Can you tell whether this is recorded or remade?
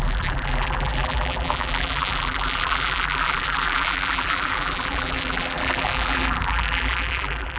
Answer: remade